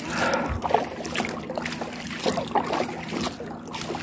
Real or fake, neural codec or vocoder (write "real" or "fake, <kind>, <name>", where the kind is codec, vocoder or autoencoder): real